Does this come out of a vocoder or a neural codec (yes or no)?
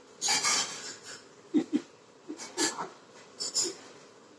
no